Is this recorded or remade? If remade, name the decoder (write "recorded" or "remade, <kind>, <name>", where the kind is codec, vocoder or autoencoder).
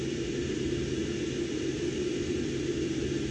recorded